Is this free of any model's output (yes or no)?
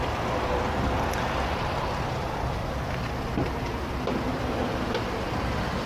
yes